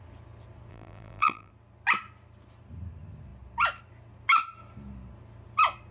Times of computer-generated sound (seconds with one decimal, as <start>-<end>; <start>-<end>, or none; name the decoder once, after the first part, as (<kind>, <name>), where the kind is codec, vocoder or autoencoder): 0.7-1.5 (vocoder, BigVGAN v2)